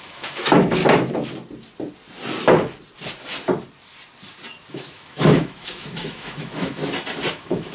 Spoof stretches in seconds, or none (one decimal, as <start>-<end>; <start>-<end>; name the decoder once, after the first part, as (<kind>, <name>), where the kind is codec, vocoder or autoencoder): 0.0-0.8 (autoencoder, DAC-VAE); 4.7-6.8; 7.3-7.7